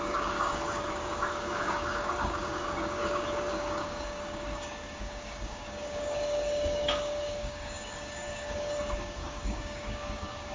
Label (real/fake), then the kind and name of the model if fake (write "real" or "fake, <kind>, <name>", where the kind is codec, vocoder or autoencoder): fake, codec, DAC